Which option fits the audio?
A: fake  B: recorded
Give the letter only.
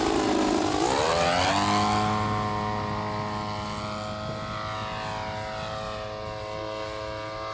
B